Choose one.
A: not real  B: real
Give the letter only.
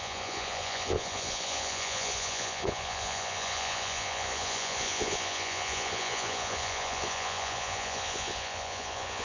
A